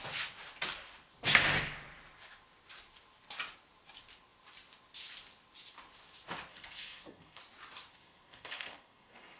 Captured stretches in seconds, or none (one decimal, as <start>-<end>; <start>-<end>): 0.0-6.5; 7.4-7.9